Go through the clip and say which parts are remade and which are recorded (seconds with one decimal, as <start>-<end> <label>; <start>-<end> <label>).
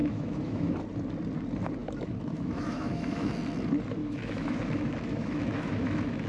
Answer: 0.0-0.8 remade; 0.8-1.8 recorded; 1.8-3.3 remade; 3.3-4.0 recorded; 4.0-6.3 remade